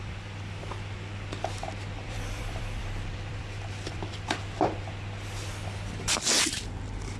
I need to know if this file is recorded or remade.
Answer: remade